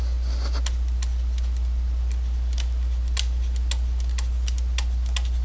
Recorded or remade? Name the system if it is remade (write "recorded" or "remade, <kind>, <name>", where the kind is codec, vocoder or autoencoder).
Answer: recorded